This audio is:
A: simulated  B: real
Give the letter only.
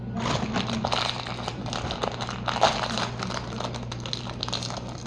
B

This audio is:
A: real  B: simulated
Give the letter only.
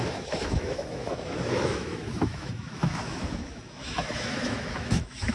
B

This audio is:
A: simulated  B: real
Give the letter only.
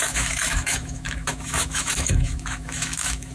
A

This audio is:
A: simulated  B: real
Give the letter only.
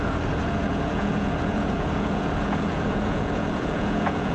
A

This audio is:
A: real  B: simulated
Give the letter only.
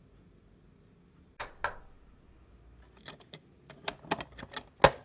A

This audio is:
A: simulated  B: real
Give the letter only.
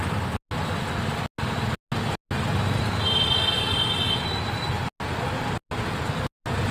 B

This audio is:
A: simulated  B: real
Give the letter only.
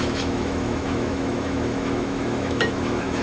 A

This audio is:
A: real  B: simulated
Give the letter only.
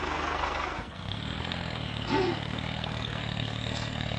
B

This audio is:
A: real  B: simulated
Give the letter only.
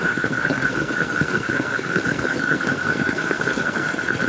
B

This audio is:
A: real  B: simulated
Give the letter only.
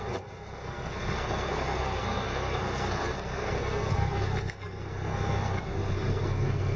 B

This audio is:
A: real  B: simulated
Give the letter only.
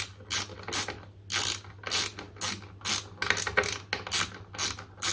A